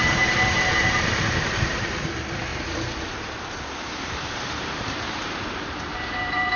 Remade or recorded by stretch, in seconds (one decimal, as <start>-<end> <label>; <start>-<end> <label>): 0.0-2.5 remade; 2.5-3.8 recorded; 3.8-6.6 remade